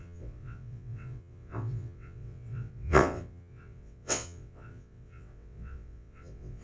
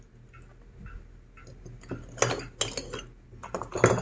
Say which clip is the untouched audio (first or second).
second